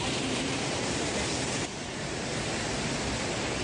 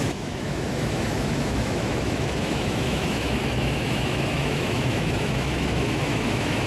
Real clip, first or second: first